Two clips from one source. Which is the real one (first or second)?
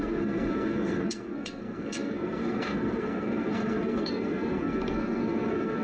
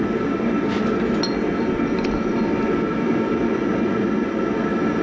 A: second